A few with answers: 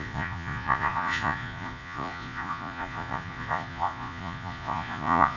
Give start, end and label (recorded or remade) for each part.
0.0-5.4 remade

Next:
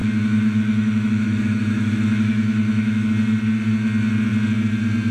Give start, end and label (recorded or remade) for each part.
0.0-3.1 remade; 3.1-5.1 recorded

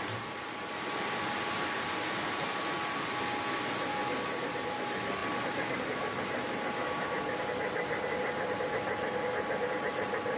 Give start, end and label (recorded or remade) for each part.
0.0-10.4 recorded

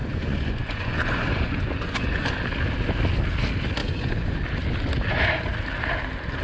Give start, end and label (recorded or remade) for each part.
0.0-2.3 remade; 2.3-3.8 recorded; 3.8-4.3 remade; 4.3-6.4 recorded